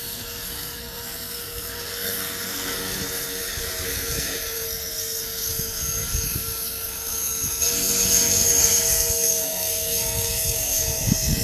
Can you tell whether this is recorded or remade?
remade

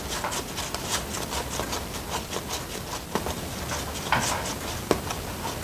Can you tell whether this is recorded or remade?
recorded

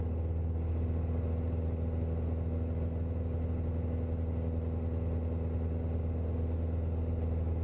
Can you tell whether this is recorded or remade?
recorded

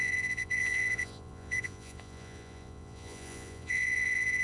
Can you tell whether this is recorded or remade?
remade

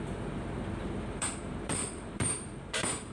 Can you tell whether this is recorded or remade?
remade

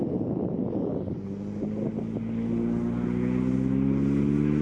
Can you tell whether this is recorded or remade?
recorded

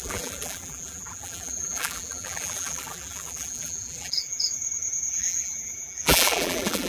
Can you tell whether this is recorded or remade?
remade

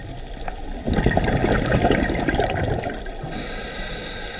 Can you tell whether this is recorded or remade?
recorded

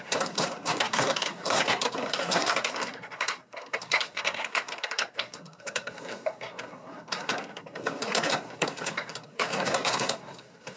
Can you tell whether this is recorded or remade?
remade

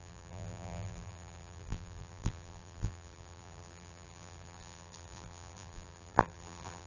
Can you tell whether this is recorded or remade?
remade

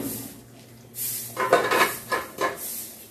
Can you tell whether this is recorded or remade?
recorded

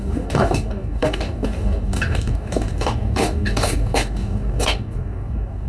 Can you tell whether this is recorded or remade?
remade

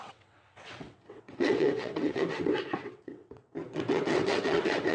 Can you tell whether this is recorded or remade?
remade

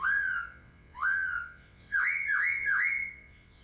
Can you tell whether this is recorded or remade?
remade